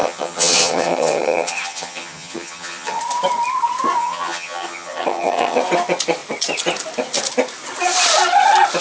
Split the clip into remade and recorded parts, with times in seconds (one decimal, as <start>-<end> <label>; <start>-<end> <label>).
0.0-3.0 remade; 3.0-4.0 recorded; 4.0-5.6 remade; 5.6-8.8 recorded